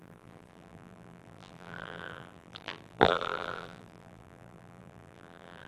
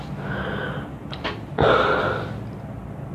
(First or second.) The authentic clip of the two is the second